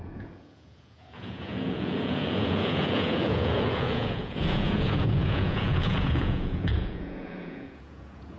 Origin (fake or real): fake